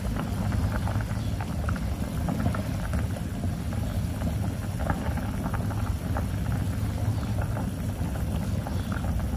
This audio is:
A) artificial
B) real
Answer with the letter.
B